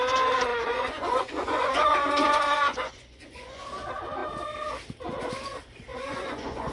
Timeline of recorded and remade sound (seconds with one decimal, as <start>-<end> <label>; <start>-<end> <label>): 0.0-0.5 recorded; 0.5-3.6 remade; 3.6-5.9 recorded; 5.9-6.7 remade